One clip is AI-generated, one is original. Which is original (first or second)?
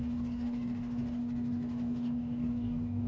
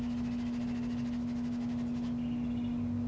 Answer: second